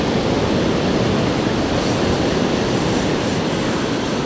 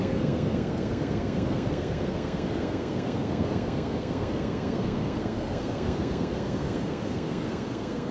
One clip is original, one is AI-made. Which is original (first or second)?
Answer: first